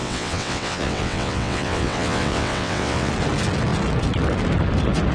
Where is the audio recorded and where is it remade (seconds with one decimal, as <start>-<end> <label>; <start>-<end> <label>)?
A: 0.0-3.1 remade; 3.1-5.1 recorded